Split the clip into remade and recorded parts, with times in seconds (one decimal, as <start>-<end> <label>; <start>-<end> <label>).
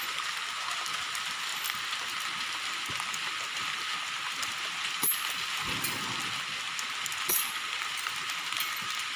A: 0.0-9.2 recorded